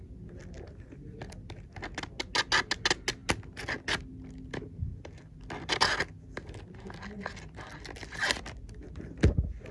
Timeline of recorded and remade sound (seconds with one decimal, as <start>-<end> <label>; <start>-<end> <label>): 0.0-8.0 recorded; 8.0-9.7 remade